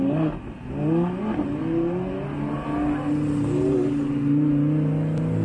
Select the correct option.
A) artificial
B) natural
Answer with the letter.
B